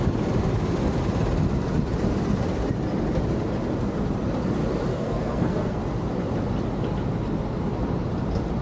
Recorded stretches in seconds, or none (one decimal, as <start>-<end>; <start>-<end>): 0.0-4.9; 5.8-8.6